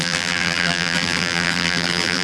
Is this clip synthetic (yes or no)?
yes